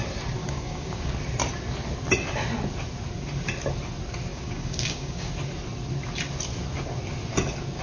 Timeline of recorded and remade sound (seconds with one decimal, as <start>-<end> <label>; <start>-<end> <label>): 0.0-0.4 recorded; 0.4-1.1 remade; 1.1-4.3 recorded; 4.3-5.3 remade; 5.3-7.8 recorded

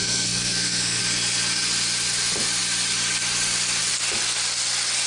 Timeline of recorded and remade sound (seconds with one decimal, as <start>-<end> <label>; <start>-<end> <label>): 0.0-1.0 remade; 1.0-5.1 recorded

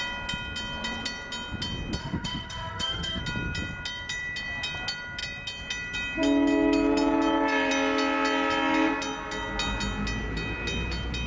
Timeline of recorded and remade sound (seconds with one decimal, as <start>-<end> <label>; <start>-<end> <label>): 0.0-2.0 recorded; 2.0-3.2 remade; 3.2-11.3 recorded